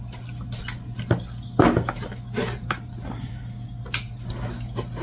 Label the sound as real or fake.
real